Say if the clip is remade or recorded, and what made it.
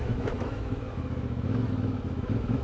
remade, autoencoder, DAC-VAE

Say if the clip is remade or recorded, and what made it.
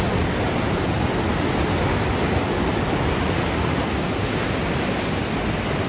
recorded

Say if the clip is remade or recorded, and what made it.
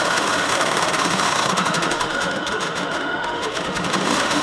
remade, autoencoder, DAC-VAE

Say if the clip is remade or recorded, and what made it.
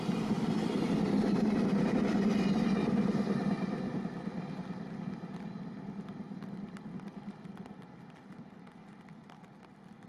recorded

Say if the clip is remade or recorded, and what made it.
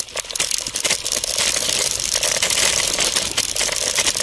recorded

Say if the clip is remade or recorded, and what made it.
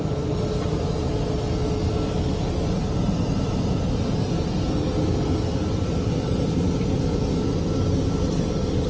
recorded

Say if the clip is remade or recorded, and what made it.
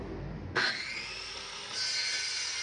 recorded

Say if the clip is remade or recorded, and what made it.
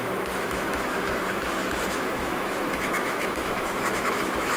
remade, autoencoder, DAC-VAE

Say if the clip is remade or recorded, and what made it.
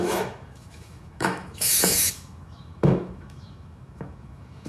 remade, autoencoder, DAC-VAE